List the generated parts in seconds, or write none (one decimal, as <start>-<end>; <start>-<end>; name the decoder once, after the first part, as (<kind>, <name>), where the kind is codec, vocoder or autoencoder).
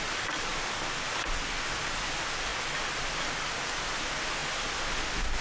none